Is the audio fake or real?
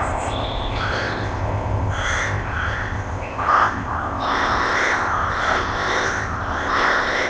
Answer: fake